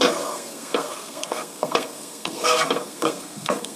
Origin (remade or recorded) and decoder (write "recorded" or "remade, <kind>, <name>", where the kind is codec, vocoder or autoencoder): remade, codec, SNAC